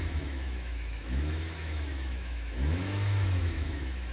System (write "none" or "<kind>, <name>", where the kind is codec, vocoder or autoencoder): autoencoder, DAC-VAE